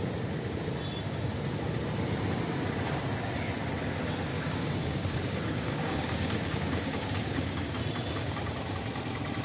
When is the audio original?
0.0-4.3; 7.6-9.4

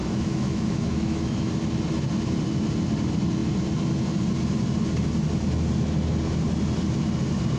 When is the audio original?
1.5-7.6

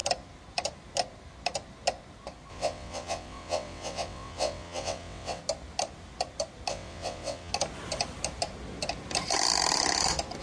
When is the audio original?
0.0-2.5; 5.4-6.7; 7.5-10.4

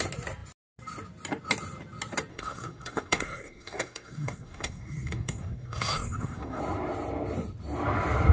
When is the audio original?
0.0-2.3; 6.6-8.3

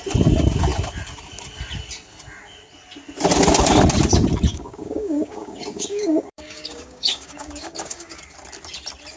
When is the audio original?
0.0-4.5; 8.2-9.2

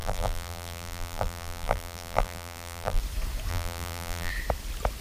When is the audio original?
3.0-3.5; 4.3-5.0